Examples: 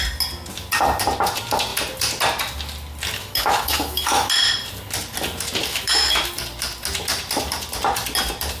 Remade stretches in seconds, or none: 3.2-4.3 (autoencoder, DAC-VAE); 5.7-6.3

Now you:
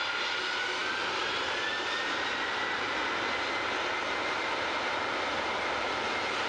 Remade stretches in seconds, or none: none

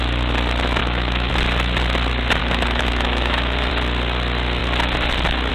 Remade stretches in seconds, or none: 0.8-1.3 (autoencoder, DAC-VAE); 2.4-3.7

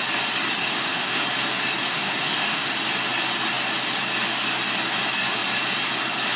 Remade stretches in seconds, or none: 0.6-1.2 (autoencoder, DAC-VAE); 1.8-2.7

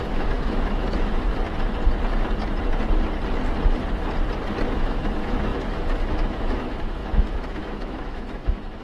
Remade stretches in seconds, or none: 0.0-1.3 (autoencoder, DAC-VAE); 4.7-8.8

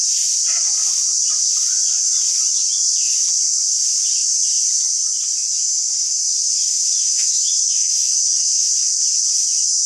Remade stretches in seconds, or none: 6.3-8.7 (autoencoder, DAC-VAE)